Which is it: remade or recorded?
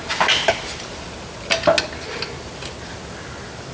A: recorded